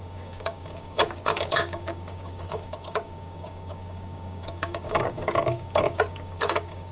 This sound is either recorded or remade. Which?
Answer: remade